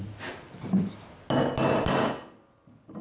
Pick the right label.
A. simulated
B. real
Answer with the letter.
B